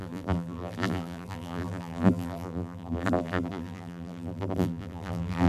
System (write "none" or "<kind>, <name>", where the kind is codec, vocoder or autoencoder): vocoder, BigVGAN v2